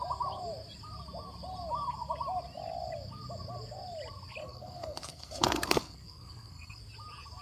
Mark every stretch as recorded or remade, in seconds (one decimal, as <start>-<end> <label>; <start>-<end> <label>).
0.0-4.4 recorded; 4.4-6.8 remade; 6.8-7.4 recorded